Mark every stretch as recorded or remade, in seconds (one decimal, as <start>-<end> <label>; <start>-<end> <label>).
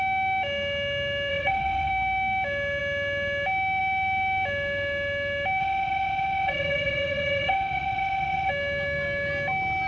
0.0-1.3 recorded; 1.3-1.9 remade; 1.9-5.6 recorded; 5.6-8.5 remade; 8.5-9.9 recorded